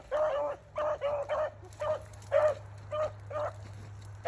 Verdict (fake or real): real